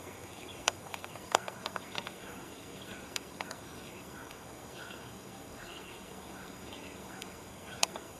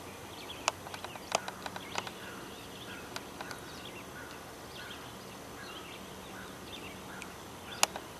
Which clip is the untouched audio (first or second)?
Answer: second